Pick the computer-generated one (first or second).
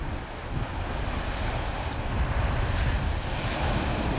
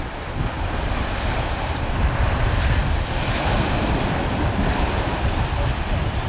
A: second